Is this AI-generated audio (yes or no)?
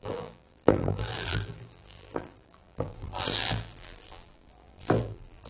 yes